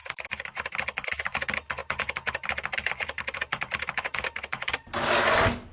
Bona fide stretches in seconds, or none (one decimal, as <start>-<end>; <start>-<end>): 0.7-1.8; 4.7-5.7